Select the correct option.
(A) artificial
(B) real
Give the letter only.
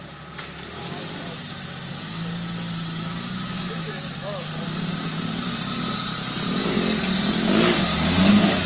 B